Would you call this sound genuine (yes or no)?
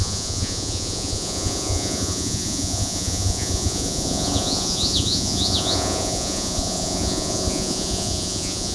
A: no